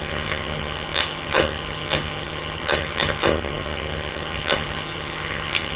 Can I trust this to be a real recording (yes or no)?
no